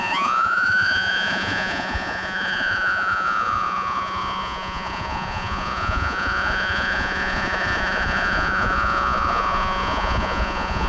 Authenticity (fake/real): fake